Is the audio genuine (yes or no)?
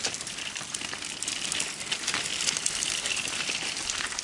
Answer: yes